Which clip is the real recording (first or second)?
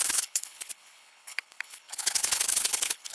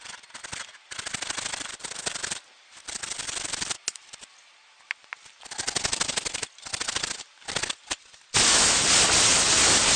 second